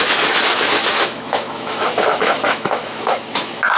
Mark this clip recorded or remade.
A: remade